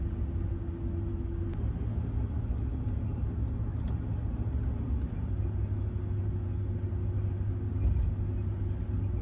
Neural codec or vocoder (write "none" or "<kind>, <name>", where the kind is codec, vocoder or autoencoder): none